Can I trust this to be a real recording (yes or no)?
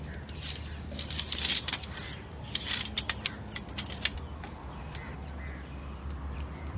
yes